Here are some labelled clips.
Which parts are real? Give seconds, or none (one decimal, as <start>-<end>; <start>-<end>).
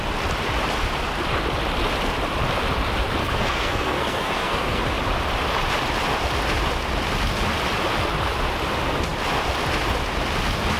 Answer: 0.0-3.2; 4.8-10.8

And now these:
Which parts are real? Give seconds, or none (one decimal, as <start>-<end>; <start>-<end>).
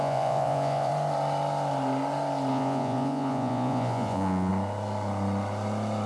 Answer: 0.9-2.5; 4.5-6.1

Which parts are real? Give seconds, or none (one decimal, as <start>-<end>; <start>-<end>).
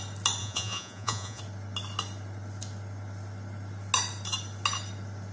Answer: 0.0-0.4; 1.4-5.3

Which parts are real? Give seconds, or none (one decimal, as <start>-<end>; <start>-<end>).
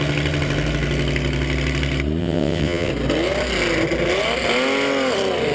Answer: 0.0-2.2; 2.9-5.5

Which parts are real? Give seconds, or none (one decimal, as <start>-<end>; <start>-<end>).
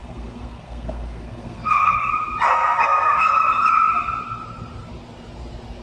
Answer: 2.1-2.5; 3.3-5.8